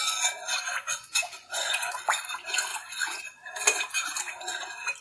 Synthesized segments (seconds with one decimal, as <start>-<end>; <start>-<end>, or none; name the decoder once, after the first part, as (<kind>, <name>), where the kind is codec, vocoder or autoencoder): 0.8-2.2 (vocoder, Vocos); 2.7-3.2